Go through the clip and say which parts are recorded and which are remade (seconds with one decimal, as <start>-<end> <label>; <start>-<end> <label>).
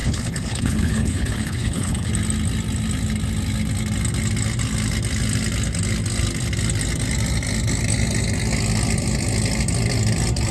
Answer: 0.0-2.1 remade; 2.1-10.5 recorded